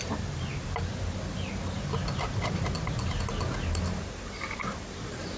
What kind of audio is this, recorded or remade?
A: recorded